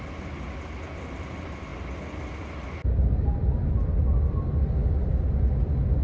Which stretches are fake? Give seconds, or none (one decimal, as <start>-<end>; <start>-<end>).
none